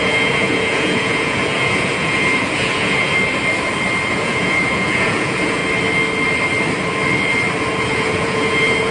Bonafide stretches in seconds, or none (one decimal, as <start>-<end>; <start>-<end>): 3.1-4.1; 5.6-7.8